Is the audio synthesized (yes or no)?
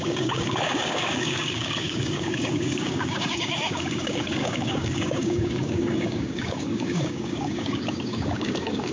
yes